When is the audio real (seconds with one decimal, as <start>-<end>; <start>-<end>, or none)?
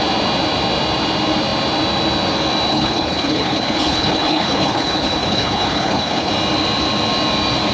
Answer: 0.0-2.7; 6.3-7.7